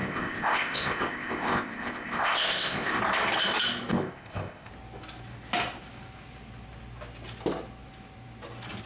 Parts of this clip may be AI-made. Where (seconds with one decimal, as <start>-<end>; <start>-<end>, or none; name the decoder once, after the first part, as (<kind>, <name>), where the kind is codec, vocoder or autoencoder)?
0.0-3.0 (codec, ZipCodec); 3.9-4.7